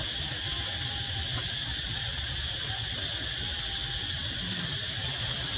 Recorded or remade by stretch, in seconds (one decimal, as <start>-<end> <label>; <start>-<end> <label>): 0.0-1.7 recorded; 1.7-2.7 remade; 2.7-5.6 recorded